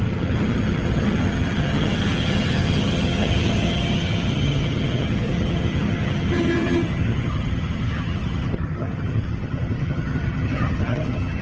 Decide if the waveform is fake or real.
fake